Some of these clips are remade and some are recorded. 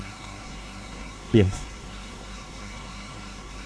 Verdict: remade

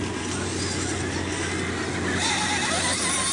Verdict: recorded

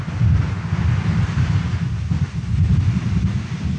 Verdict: recorded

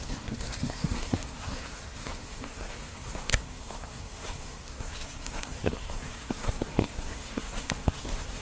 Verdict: remade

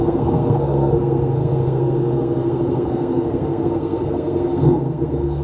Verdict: remade